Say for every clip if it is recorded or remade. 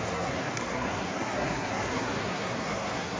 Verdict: remade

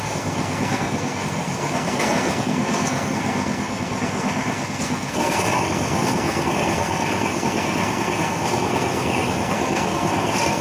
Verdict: remade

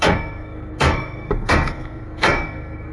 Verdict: remade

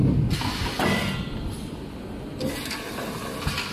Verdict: recorded